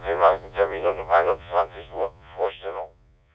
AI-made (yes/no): yes